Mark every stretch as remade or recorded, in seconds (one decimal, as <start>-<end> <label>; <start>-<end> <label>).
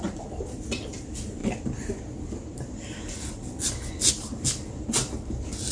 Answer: 0.0-5.7 recorded